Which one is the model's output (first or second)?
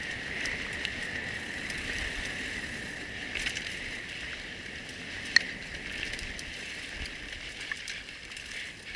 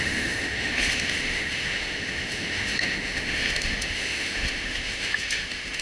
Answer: second